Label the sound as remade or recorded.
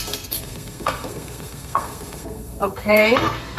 remade